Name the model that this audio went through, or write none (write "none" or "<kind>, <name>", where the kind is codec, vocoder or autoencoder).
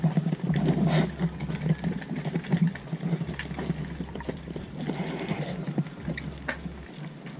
none